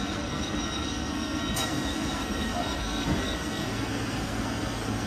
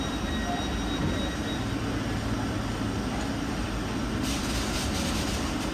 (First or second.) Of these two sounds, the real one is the second